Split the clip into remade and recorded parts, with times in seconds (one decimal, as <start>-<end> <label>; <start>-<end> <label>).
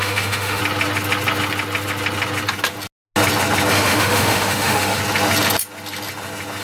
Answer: 0.0-0.6 remade; 0.6-3.7 recorded; 3.7-5.0 remade; 5.0-6.6 recorded